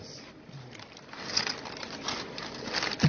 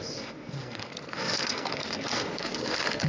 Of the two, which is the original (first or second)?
first